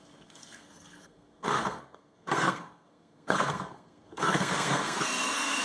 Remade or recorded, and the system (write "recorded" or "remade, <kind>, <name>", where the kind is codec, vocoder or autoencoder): remade, codec, SNAC